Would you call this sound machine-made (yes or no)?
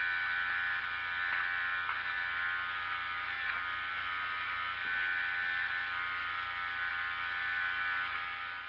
no